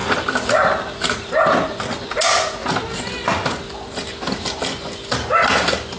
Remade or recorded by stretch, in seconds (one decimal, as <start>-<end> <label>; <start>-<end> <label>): 0.0-6.0 recorded